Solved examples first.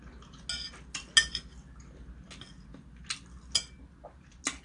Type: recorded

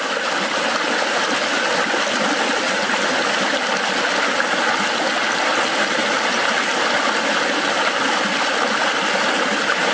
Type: recorded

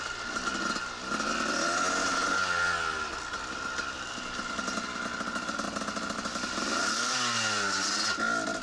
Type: recorded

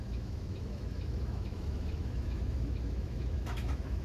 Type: remade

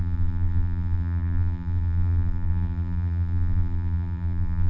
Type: remade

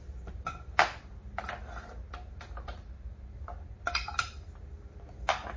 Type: remade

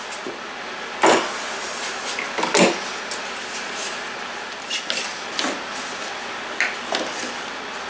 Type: recorded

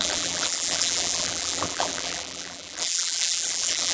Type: remade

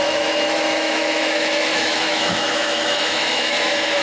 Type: remade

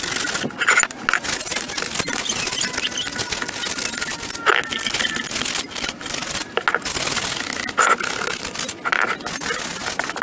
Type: recorded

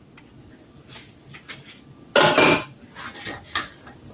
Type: recorded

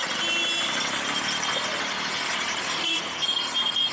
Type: recorded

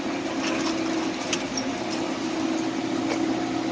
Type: recorded